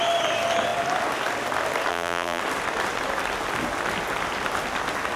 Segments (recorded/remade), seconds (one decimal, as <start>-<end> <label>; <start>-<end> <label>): 0.0-1.9 recorded; 1.9-2.4 remade; 2.4-5.2 recorded